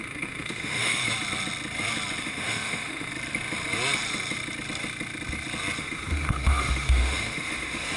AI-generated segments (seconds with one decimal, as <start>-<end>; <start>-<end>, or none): 0.0-1.0; 2.2-3.1; 5.8-8.0